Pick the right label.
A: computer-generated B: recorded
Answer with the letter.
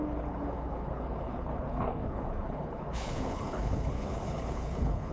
A